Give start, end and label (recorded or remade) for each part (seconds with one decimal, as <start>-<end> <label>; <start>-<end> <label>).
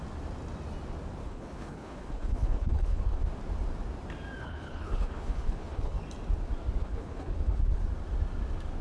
0.0-1.2 recorded; 1.2-3.2 remade; 3.2-4.4 recorded; 4.4-6.0 remade; 6.0-6.8 recorded; 6.8-7.6 remade; 7.6-8.8 recorded